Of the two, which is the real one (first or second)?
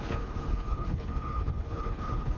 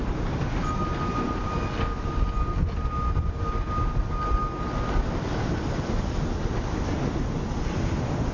second